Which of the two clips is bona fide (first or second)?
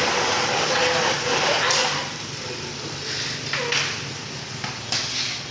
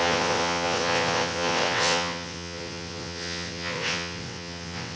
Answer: first